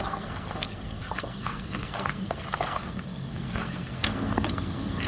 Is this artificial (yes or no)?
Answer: yes